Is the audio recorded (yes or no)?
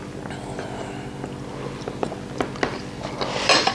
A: yes